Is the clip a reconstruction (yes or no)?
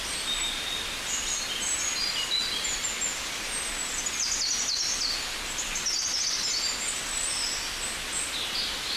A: no